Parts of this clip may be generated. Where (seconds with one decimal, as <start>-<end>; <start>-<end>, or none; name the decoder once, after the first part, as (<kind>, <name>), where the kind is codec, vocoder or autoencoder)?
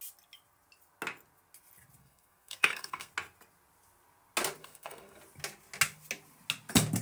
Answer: 2.0-3.1 (codec, SNAC); 4.6-5.2